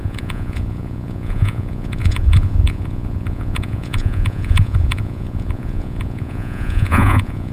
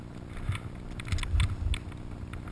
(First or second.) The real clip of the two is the second